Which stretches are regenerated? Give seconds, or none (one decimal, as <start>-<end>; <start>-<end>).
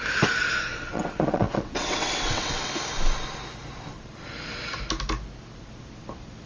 0.7-2.7